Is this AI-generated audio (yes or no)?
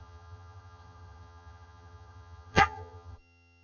yes